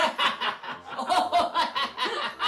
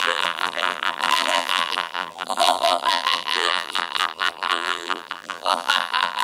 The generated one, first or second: second